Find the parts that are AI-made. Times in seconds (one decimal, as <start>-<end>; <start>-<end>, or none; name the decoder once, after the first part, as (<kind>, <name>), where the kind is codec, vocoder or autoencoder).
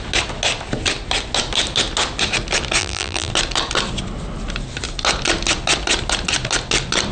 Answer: 2.8-3.3 (vocoder, BigVGAN v2)